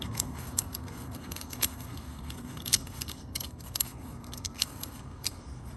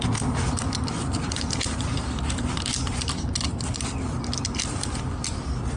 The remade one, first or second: first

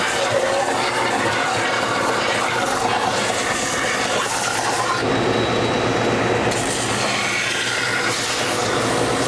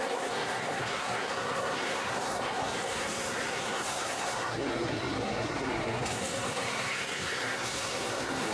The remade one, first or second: second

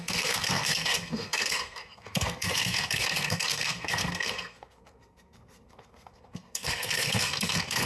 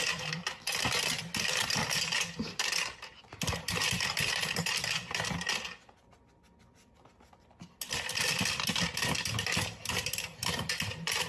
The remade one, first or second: first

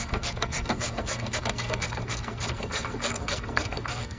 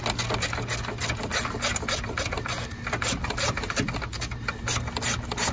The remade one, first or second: first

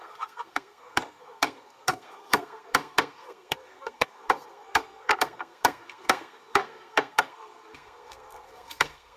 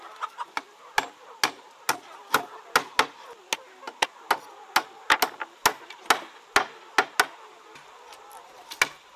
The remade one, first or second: first